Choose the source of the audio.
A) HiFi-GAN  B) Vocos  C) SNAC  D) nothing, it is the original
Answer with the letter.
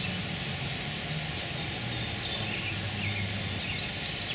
D